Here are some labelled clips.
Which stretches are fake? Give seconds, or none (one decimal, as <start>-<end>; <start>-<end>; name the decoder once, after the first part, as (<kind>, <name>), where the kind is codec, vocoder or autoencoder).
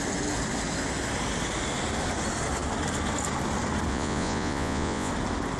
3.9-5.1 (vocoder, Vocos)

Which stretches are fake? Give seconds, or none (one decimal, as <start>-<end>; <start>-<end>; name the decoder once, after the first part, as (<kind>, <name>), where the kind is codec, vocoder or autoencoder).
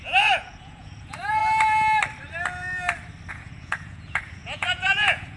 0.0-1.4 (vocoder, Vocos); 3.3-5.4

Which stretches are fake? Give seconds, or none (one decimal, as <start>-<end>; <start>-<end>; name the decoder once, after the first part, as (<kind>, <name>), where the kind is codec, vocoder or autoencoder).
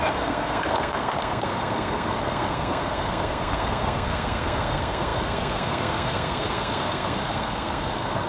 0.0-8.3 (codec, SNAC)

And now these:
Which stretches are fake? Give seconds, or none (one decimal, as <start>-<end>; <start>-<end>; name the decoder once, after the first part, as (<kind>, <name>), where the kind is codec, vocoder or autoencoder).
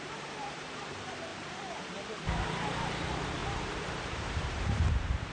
0.0-5.3 (vocoder, BigVGAN v2)